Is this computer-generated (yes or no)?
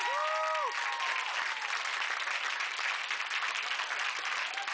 no